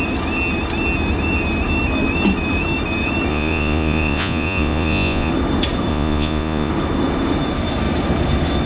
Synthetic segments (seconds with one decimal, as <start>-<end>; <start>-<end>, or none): 3.3-5.3; 5.9-6.7